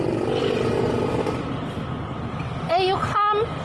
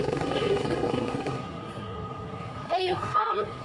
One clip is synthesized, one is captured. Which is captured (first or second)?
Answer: first